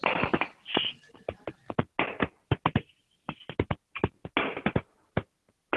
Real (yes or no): yes